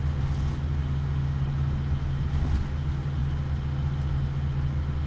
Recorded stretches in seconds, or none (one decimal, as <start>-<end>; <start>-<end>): 0.0-0.8; 1.4-5.1